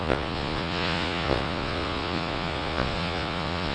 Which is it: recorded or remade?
remade